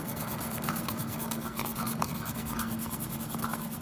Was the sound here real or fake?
fake